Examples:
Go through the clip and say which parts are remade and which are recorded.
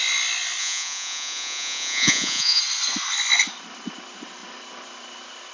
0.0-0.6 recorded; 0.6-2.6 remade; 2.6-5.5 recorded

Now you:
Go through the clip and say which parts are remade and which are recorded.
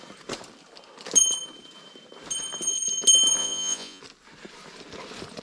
0.0-3.4 recorded; 3.4-4.0 remade; 4.0-5.4 recorded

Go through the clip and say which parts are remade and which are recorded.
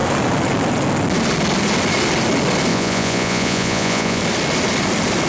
0.0-2.7 recorded; 2.7-4.2 remade; 4.2-5.3 recorded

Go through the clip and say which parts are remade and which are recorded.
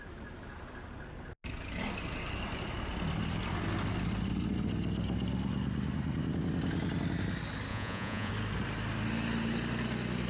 0.0-7.7 recorded; 7.7-8.3 remade; 8.3-10.3 recorded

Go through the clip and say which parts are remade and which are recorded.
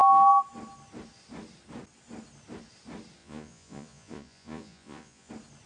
0.0-3.2 recorded; 3.2-5.3 remade; 5.3-5.7 recorded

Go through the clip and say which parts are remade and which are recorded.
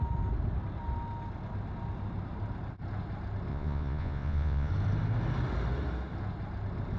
0.0-3.5 recorded; 3.5-4.7 remade; 4.7-7.0 recorded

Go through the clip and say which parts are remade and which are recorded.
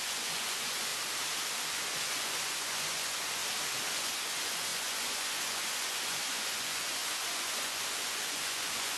0.0-0.9 remade; 0.9-1.6 recorded; 1.6-3.4 remade; 3.4-3.9 recorded; 3.9-9.0 remade